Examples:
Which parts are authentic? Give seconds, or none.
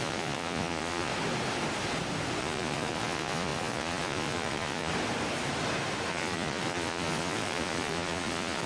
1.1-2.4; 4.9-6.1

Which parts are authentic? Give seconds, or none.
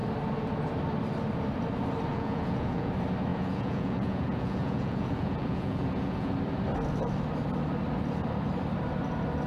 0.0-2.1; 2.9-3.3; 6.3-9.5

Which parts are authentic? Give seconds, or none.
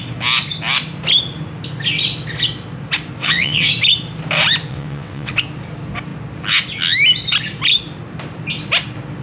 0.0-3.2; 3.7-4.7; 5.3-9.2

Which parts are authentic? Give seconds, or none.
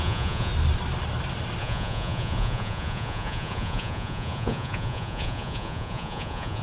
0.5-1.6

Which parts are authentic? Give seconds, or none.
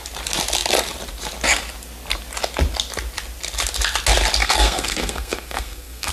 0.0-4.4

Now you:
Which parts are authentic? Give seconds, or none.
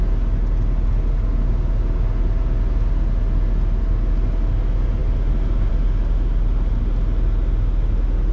0.0-8.3